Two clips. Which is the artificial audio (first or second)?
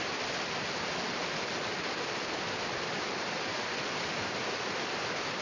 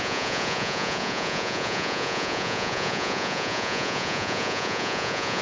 second